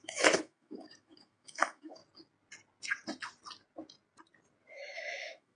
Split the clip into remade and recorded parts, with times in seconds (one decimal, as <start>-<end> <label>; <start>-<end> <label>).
0.0-2.0 remade; 2.0-4.7 recorded; 4.7-5.6 remade